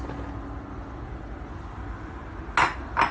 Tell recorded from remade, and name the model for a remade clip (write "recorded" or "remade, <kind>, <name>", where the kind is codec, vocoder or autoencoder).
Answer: recorded